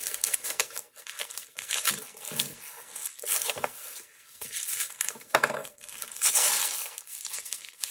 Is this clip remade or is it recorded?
remade